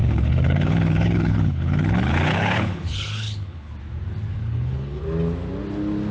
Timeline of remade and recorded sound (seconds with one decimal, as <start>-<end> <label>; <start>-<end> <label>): 0.0-3.7 remade; 3.7-4.3 recorded; 4.3-5.0 remade; 5.0-6.1 recorded